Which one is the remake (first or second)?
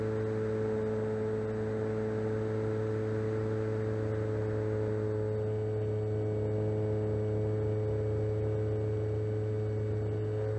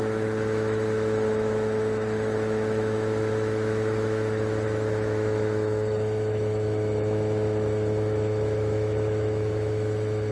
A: second